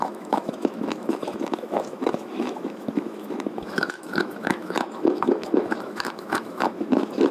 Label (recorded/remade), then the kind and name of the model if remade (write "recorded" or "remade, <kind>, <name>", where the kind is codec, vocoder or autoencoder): remade, autoencoder, DAC-VAE